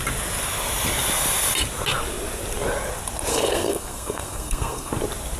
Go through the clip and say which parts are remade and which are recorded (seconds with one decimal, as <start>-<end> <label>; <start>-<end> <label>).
0.0-3.3 recorded; 3.3-4.9 remade; 4.9-5.4 recorded